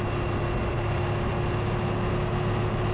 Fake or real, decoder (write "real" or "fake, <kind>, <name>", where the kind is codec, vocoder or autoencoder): real